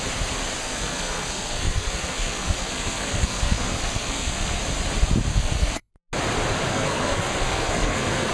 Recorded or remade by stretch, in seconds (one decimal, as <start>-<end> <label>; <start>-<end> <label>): 0.0-0.6 recorded; 0.6-4.6 remade; 4.6-5.3 recorded; 5.3-5.9 remade; 5.9-6.7 recorded; 6.7-8.3 remade